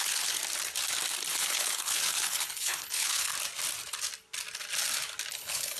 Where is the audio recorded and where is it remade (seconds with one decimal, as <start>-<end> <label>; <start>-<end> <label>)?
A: 0.0-0.4 remade; 0.4-1.3 recorded; 1.3-3.3 remade; 3.3-5.3 recorded; 5.3-5.8 remade